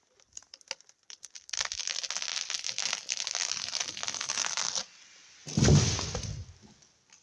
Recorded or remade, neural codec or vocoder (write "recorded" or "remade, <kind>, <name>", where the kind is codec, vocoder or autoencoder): recorded